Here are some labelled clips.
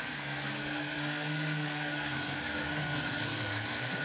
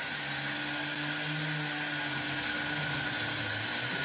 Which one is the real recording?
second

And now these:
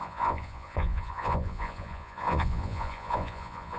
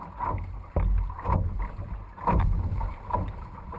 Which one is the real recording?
second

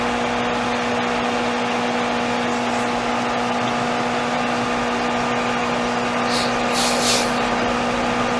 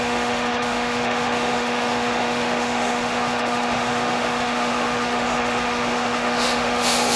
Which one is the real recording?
first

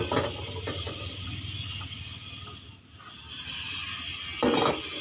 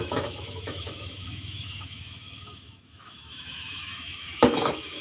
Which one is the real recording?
first